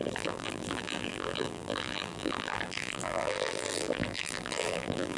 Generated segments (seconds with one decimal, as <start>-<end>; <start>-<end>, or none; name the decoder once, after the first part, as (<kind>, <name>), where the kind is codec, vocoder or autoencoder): 0.0-5.2 (vocoder, BigVGAN v2)